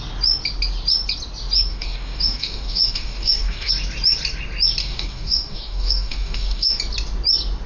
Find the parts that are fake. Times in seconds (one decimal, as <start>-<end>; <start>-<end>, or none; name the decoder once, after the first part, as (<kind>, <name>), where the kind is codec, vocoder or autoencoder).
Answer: 1.7-3.7 (codec, DAC); 4.8-6.8